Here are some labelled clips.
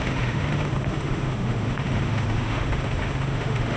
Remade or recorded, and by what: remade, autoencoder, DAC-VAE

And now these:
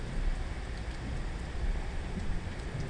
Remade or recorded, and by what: recorded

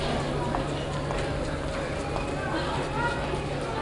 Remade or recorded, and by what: recorded